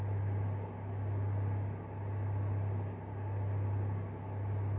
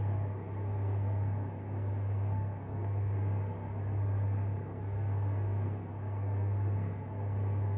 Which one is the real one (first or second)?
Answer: first